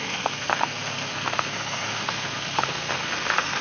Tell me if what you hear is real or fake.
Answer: fake